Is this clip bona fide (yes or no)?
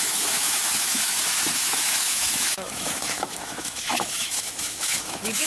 no